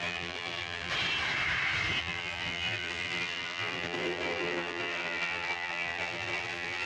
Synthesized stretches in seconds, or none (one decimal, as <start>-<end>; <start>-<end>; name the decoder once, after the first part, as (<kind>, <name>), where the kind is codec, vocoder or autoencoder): 0.0-0.9 (vocoder, BigVGAN v2); 2.0-6.9